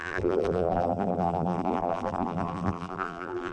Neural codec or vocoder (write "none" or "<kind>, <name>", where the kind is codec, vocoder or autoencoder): vocoder, BigVGAN v2